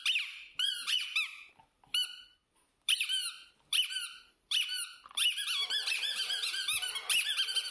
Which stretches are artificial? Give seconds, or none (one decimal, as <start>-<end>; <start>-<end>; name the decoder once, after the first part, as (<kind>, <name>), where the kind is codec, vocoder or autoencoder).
none